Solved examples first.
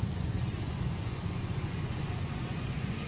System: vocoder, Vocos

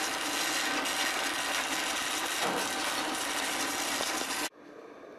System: none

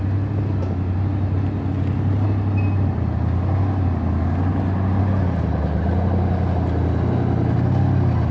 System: none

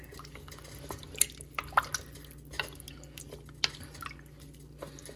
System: none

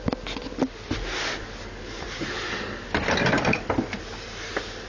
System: none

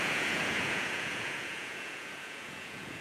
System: vocoder, Vocos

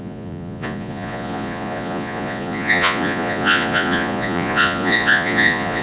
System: vocoder, Vocos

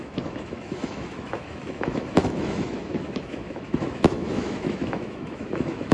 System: autoencoder, DAC-VAE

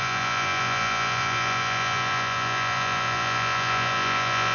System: vocoder, Vocos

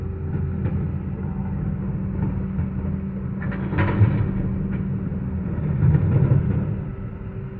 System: none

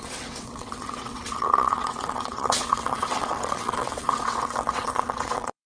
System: vocoder, WaveNeXt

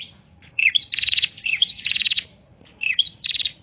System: vocoder, Vocos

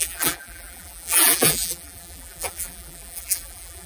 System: vocoder, BigVGAN v2